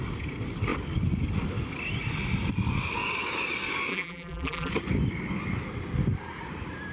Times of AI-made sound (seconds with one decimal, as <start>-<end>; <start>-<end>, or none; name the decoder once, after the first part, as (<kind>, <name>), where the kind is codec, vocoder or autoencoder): 3.9-4.7 (vocoder, BigVGAN v2)